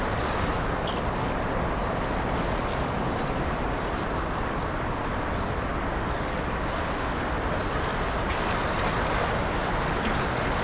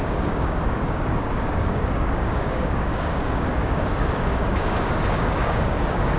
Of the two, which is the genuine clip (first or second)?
first